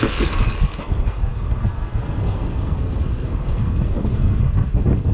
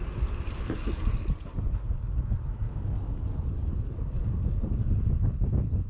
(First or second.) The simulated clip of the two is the first